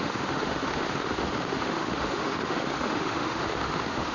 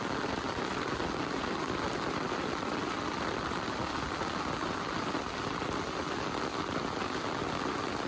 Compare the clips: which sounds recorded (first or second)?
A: second